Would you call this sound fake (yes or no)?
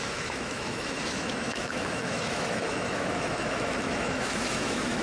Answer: yes